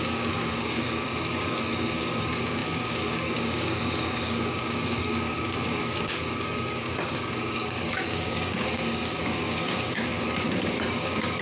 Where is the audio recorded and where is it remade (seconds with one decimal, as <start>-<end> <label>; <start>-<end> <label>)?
0.0-11.4 remade